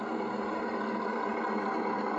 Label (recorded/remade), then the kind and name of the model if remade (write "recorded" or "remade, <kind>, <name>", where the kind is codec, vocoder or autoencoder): recorded